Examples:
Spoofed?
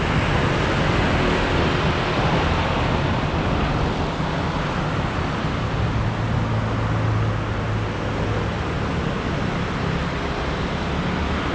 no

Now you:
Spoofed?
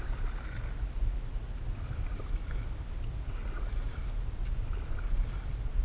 no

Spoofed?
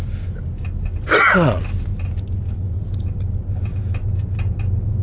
no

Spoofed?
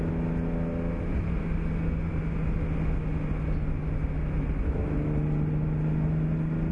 no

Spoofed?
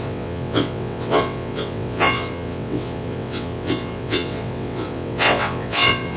yes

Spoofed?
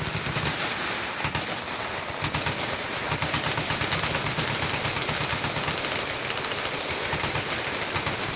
no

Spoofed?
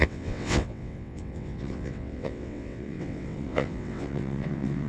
yes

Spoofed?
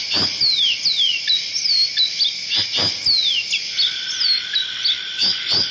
no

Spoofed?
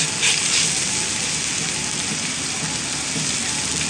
no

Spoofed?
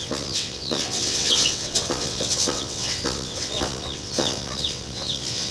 yes